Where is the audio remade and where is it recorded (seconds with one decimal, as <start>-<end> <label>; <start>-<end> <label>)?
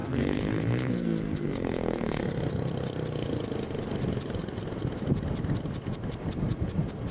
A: 0.0-2.2 remade; 2.2-7.1 recorded